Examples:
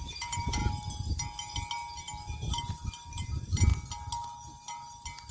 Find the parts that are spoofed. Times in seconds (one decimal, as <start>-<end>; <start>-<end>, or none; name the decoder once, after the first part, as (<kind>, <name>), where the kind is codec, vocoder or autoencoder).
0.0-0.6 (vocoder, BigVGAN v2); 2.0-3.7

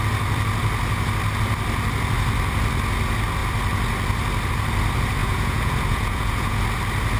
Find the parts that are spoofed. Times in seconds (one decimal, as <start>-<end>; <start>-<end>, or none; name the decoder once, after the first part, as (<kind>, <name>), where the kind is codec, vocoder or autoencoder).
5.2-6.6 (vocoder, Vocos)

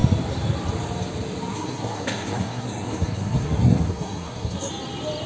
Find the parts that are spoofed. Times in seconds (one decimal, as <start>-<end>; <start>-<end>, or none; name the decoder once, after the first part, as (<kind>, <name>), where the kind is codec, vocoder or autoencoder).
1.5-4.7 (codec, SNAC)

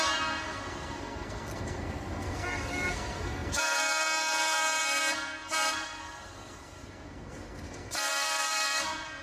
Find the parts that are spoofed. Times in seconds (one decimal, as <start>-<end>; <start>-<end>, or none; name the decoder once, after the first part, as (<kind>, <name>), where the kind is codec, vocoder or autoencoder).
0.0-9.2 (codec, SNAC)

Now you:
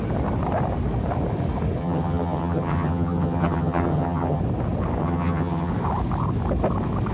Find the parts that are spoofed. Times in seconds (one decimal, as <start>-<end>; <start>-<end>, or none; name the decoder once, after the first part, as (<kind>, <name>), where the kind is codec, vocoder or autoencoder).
1.8-4.4 (vocoder, HiFi-GAN); 5.0-5.7

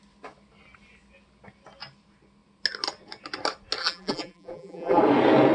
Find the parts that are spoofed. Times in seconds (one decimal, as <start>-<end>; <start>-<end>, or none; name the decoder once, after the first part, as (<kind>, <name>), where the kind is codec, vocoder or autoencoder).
3.8-5.0 (vocoder, BigVGAN v2)

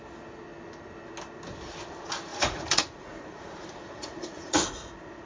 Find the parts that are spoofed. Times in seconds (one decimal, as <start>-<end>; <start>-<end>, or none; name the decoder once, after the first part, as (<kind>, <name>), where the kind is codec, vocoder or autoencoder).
2.3-5.3 (vocoder, Vocos)